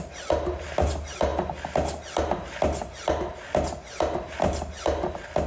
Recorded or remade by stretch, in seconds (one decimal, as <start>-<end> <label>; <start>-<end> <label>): 0.0-5.5 recorded

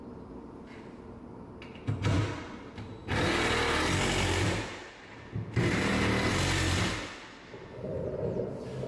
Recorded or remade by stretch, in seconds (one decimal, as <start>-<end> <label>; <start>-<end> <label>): 0.0-8.9 recorded

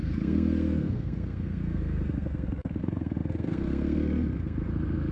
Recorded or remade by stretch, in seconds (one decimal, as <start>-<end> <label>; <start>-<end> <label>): 0.0-5.1 remade

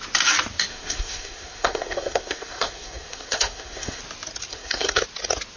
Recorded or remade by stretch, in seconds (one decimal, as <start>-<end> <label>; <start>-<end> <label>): 0.0-0.7 recorded; 0.7-4.0 remade; 4.0-4.5 recorded; 4.5-5.0 remade; 5.0-5.6 recorded

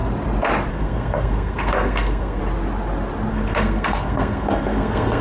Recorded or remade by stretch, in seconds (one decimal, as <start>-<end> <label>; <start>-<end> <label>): 0.0-0.7 recorded; 0.7-2.4 remade; 2.4-3.3 recorded; 3.3-5.2 remade

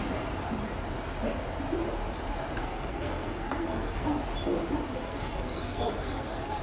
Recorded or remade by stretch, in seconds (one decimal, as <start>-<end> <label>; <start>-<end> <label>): 0.0-2.6 recorded; 2.6-4.2 remade; 4.2-5.0 recorded; 5.0-6.6 remade

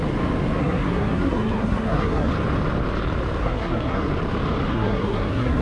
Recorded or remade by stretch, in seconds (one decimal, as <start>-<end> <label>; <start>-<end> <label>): 0.0-0.6 recorded; 0.6-2.3 remade; 2.3-3.4 recorded; 3.4-4.1 remade; 4.1-4.7 recorded; 4.7-5.6 remade